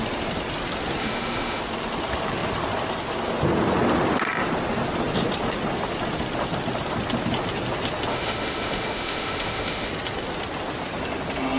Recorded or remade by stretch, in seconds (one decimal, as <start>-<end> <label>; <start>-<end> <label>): 0.0-1.0 recorded; 1.0-1.6 remade; 1.6-8.1 recorded; 8.1-9.9 remade; 9.9-11.6 recorded